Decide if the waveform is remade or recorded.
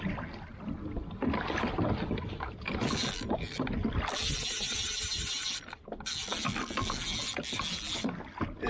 recorded